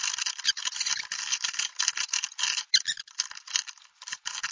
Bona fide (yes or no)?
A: yes